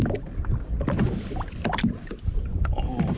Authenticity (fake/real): real